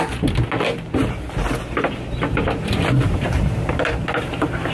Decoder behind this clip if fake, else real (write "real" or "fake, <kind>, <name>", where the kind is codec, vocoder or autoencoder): real